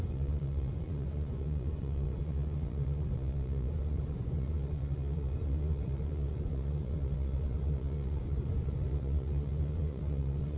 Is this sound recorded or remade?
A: remade